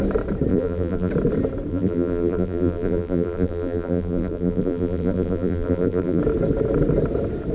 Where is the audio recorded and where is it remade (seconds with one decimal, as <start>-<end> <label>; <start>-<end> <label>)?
0.0-0.5 recorded; 0.5-1.1 remade; 1.1-1.7 recorded; 1.7-6.2 remade; 6.2-7.5 recorded